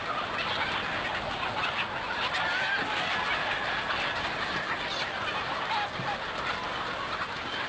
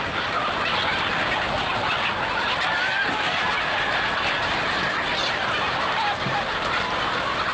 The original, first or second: first